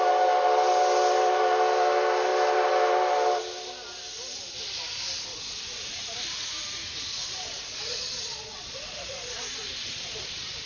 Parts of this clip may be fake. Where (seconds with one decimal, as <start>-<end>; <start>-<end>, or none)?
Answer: 5.3-6.0; 7.1-10.7